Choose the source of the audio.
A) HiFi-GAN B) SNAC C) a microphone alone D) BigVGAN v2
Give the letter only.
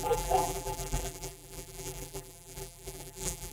D